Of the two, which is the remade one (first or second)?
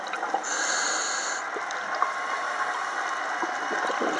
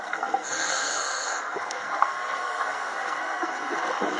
second